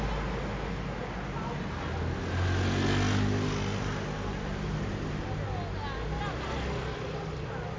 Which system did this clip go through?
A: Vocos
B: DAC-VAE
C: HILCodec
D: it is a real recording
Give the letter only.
D